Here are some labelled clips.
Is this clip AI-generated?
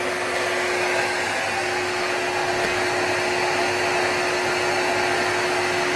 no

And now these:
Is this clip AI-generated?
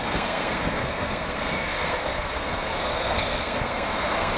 yes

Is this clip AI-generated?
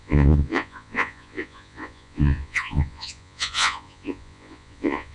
yes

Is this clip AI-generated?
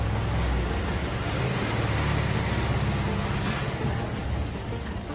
no